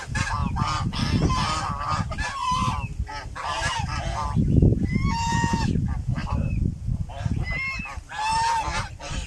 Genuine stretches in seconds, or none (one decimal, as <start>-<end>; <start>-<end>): 0.0-9.3